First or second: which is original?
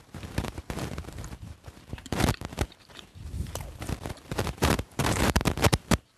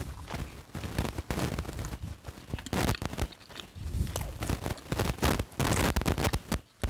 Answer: second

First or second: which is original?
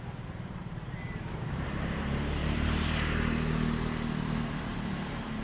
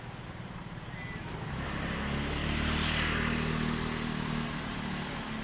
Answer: second